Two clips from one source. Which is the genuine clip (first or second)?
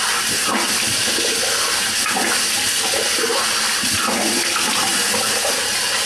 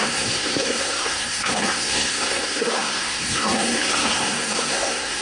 first